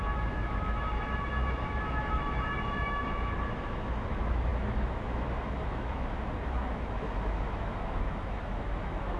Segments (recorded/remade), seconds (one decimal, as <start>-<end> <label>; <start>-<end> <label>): 0.0-9.2 remade